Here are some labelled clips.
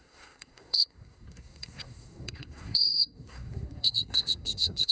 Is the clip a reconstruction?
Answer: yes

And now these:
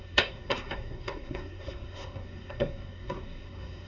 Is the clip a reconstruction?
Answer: yes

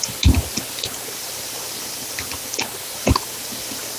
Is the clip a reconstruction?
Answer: no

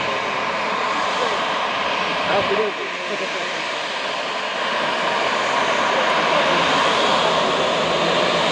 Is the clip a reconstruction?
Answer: yes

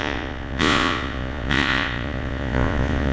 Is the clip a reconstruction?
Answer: yes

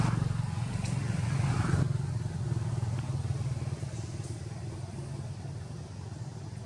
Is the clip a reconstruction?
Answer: no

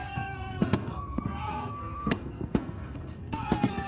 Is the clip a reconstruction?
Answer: yes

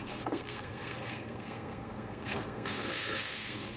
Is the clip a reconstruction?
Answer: yes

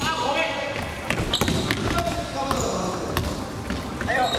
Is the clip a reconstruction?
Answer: no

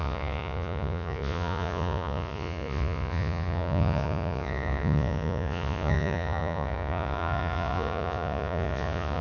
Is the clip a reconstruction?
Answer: yes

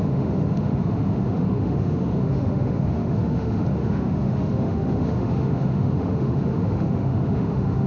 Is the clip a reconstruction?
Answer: yes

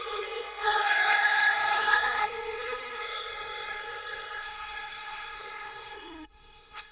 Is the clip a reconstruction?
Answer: yes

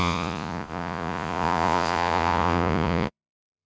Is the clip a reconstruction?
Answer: yes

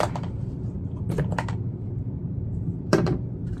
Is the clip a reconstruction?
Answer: yes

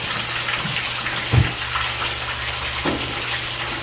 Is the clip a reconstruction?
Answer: no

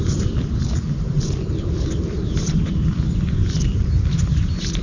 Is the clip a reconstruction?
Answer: no